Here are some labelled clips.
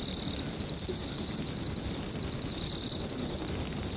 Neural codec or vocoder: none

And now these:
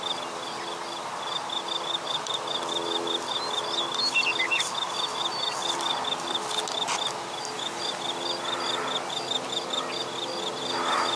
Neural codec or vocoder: none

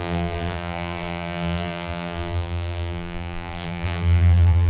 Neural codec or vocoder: vocoder, BigVGAN v2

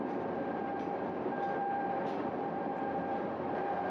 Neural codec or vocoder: vocoder, BigVGAN v2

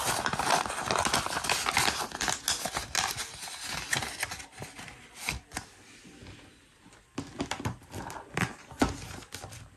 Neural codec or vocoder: none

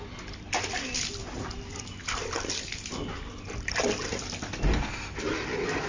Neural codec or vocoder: none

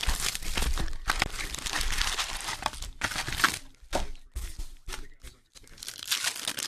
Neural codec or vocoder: vocoder, BigVGAN v2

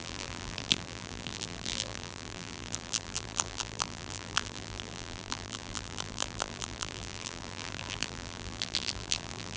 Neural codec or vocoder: vocoder, BigVGAN v2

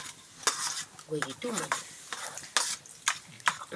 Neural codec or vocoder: none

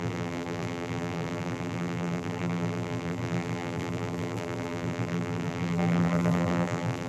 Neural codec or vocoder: vocoder, BigVGAN v2